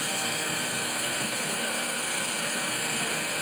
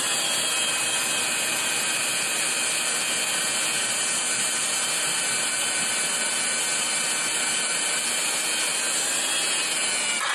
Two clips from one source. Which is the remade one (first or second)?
first